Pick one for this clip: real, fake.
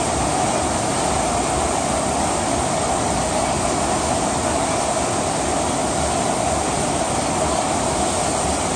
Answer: real